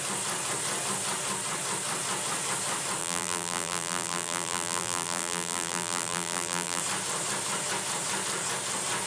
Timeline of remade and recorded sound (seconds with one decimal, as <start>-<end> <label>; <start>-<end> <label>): 0.0-3.0 recorded; 3.0-6.8 remade; 6.8-9.1 recorded